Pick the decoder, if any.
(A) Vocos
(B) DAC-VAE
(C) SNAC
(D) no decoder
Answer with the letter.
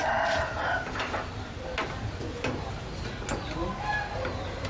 D